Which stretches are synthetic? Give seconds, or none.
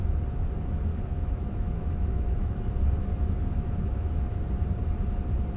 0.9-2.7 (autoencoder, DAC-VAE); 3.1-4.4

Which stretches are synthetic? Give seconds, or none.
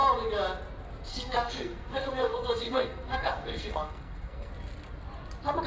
1.1-4.5 (codec, SNAC)